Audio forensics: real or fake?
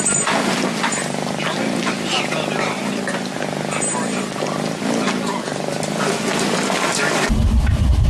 real